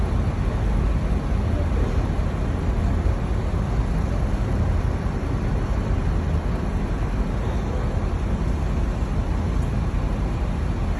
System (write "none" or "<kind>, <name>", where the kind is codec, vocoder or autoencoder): none